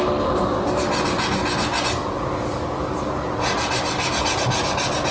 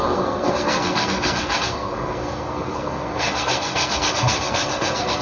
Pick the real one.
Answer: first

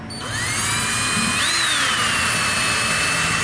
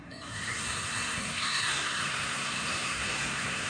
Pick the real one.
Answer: first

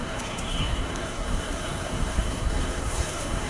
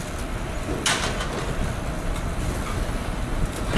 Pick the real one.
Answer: second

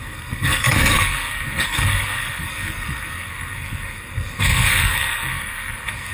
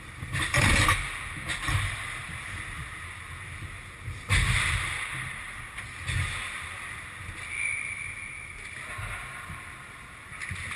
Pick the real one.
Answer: second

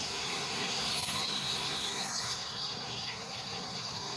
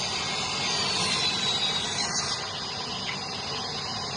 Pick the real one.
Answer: second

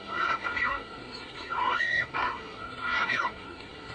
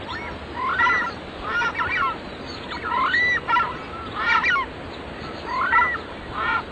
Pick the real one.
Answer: second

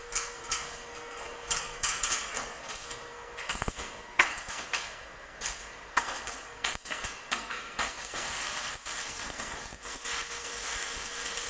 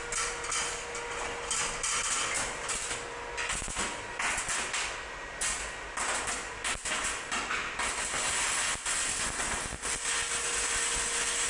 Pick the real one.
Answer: second